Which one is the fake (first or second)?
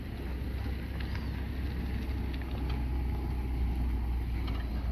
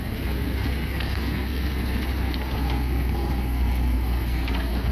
second